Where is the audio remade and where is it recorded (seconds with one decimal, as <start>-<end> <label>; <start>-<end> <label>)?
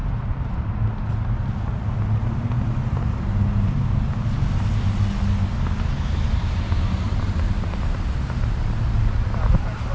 0.0-9.9 recorded